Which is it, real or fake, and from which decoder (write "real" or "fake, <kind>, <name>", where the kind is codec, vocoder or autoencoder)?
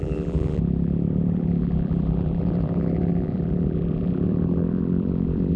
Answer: fake, vocoder, BigVGAN v2